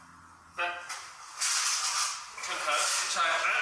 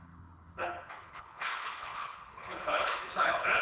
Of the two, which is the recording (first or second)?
first